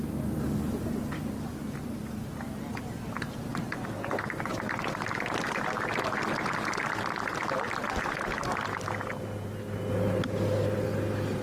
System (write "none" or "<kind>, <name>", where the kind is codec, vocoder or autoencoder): none